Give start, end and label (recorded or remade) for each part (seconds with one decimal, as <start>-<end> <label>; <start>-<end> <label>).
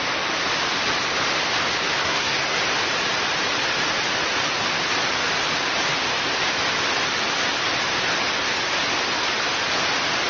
0.0-2.0 recorded; 2.0-2.6 remade; 2.6-10.3 recorded